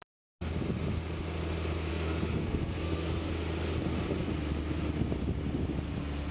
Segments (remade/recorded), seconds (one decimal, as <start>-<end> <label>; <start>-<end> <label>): 0.0-1.9 recorded; 1.9-3.3 remade; 3.3-6.3 recorded